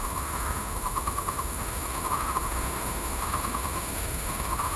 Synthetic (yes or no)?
yes